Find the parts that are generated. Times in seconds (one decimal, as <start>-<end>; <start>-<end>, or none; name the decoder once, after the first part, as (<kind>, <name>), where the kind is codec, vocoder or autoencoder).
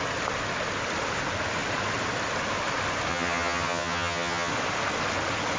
3.1-4.5 (vocoder, HiFi-GAN)